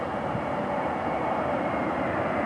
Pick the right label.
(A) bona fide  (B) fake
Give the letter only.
B